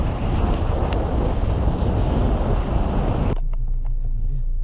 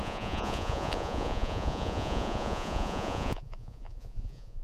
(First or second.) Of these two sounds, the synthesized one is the second